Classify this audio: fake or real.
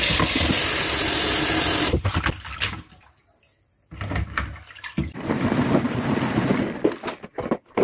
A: real